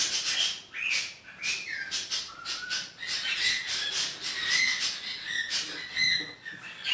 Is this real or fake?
real